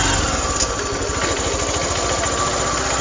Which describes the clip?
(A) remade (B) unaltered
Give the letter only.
B